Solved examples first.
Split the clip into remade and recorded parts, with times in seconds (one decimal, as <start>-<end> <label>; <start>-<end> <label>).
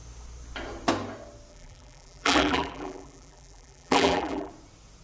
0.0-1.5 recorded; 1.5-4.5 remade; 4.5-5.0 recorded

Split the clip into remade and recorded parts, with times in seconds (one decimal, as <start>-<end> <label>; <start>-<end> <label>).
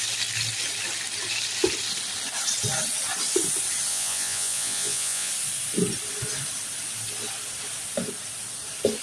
0.0-3.9 recorded; 3.9-5.3 remade; 5.3-9.0 recorded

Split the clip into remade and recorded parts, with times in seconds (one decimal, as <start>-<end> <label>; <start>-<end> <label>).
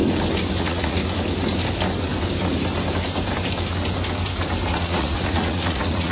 0.0-0.6 recorded; 0.6-1.0 remade; 1.0-4.7 recorded; 4.7-6.1 remade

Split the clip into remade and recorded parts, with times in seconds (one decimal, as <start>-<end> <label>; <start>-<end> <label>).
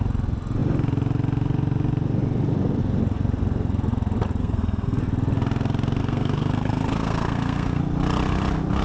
0.0-4.4 recorded; 4.4-5.0 remade; 5.0-6.0 recorded; 6.0-7.8 remade; 7.8-8.8 recorded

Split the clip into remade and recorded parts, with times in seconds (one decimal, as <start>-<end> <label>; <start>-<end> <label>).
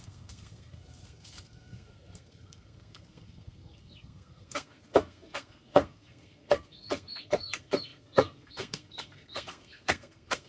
0.0-10.5 remade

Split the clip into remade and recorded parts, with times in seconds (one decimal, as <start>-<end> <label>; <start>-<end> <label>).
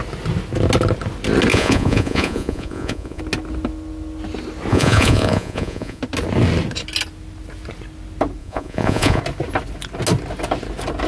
0.0-1.5 recorded; 1.5-3.2 remade; 3.2-4.7 recorded; 4.7-6.0 remade; 6.0-8.4 recorded; 8.4-9.2 remade; 9.2-11.1 recorded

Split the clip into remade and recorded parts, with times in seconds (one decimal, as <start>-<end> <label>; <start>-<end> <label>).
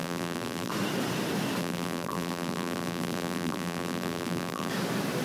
0.0-0.7 remade; 0.7-1.6 recorded; 1.6-4.7 remade; 4.7-5.2 recorded